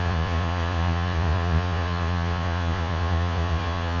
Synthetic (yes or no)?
yes